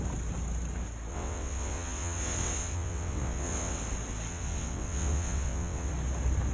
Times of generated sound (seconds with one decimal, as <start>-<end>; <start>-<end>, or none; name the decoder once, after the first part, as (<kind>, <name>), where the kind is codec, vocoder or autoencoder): 1.1-3.8 (vocoder, WaveNeXt); 4.3-5.9